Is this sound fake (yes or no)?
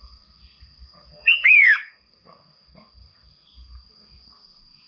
yes